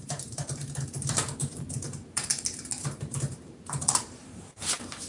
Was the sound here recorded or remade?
remade